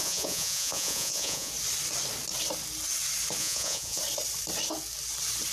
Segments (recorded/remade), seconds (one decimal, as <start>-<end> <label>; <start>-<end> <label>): 0.0-1.5 remade; 1.5-3.4 recorded; 3.4-4.0 remade; 4.0-5.5 recorded

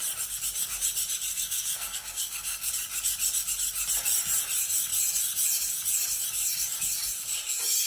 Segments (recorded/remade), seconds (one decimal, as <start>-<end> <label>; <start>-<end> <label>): 0.0-1.3 recorded; 1.3-2.7 remade; 2.7-7.9 recorded